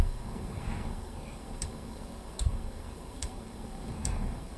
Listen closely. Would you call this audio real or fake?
fake